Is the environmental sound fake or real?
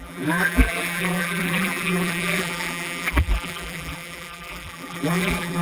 fake